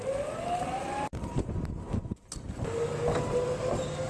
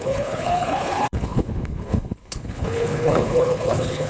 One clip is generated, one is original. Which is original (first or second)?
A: first